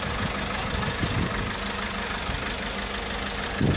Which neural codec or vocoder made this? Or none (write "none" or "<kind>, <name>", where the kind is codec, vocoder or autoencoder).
none